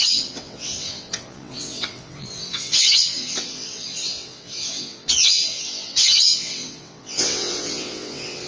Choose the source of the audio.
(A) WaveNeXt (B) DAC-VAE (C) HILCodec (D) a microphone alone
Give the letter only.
A